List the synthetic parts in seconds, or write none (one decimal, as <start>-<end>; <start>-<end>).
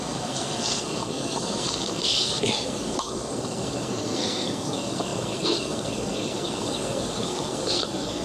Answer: 0.0-8.2